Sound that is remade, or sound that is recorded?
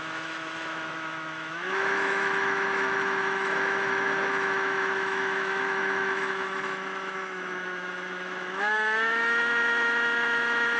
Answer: remade